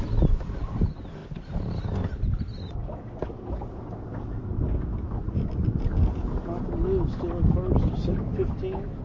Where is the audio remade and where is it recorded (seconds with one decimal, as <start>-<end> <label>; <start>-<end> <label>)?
0.0-1.2 recorded; 1.2-2.2 remade; 2.2-9.0 recorded